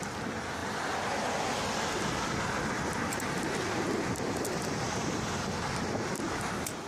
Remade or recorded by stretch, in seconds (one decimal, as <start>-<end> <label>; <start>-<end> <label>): 0.0-6.9 recorded